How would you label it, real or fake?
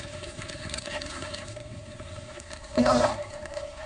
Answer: fake